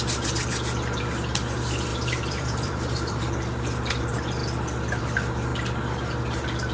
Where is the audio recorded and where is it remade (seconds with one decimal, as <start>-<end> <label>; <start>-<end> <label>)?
0.0-1.9 recorded; 1.9-3.2 remade; 3.2-6.7 recorded